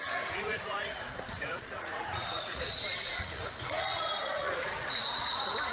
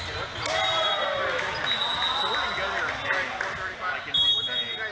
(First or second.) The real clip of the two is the second